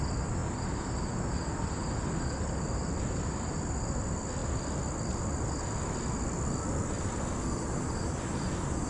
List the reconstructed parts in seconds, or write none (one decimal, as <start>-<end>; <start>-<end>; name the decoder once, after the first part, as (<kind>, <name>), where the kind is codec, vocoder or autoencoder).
none